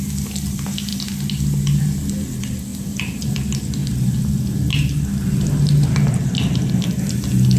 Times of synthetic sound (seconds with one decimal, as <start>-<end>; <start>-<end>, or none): 2.7-3.4